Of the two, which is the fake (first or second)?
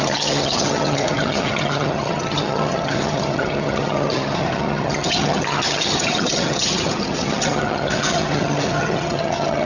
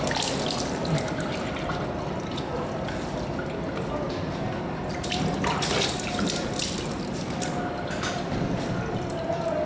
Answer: first